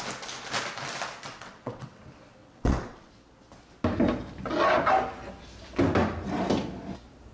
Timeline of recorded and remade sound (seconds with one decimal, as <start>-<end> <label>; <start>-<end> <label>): 0.0-1.3 recorded; 1.3-2.0 remade; 2.0-2.4 recorded; 2.4-3.1 remade; 3.1-7.3 recorded